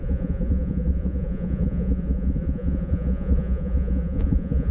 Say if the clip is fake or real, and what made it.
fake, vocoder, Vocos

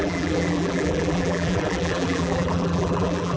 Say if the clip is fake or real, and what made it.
fake, vocoder, BigVGAN v2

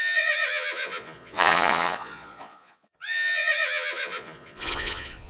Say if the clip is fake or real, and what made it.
fake, vocoder, Vocos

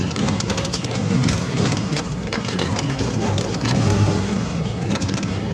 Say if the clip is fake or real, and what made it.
fake, codec, SNAC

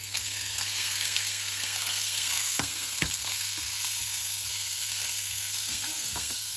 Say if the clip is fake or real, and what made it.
fake, codec, SNAC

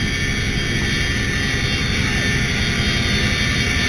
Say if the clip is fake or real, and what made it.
real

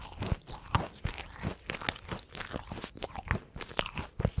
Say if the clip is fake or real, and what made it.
real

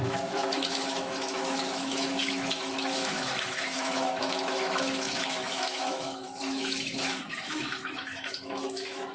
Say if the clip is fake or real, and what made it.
fake, autoencoder, DAC-VAE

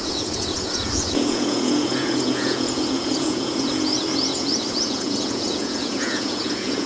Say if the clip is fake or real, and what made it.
fake, vocoder, Vocos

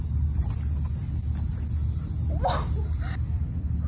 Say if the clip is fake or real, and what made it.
real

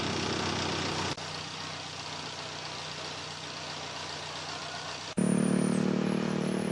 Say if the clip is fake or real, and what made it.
real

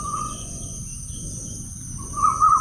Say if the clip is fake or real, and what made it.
fake, vocoder, Vocos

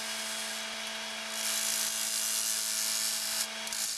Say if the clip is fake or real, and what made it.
real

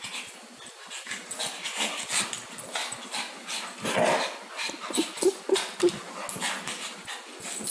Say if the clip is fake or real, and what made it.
real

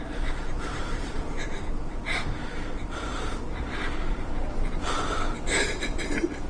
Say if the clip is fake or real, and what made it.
fake, vocoder, BigVGAN v2